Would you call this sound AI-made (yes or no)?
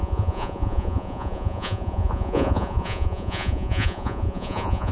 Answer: yes